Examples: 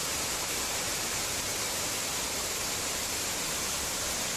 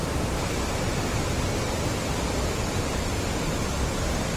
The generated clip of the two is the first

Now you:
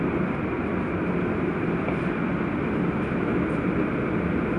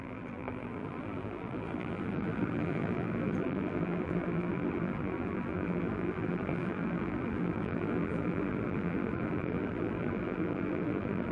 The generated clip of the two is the second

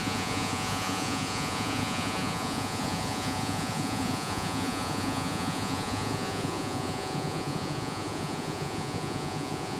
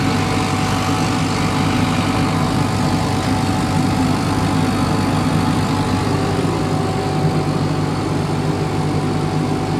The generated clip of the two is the first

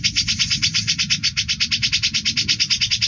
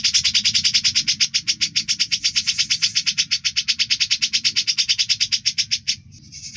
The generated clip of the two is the first